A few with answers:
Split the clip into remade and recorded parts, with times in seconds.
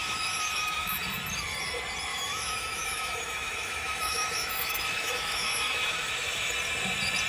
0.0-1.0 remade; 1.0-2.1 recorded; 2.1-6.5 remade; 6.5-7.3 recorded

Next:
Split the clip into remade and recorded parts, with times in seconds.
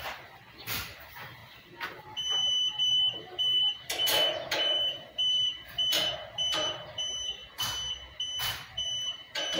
0.0-1.4 remade; 1.4-2.0 recorded; 2.0-7.4 remade; 7.4-8.4 recorded; 8.4-9.6 remade